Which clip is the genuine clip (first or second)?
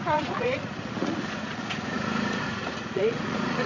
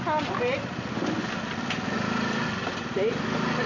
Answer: second